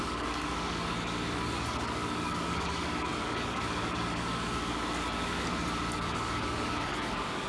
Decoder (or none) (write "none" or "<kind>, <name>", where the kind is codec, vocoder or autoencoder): codec, DAC